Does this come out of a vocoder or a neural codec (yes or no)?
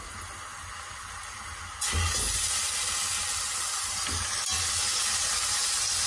no